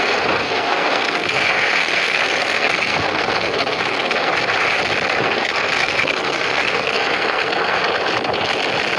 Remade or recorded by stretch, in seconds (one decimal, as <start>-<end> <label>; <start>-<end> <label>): 0.0-4.3 remade; 4.3-5.2 recorded; 5.2-7.8 remade; 7.8-9.0 recorded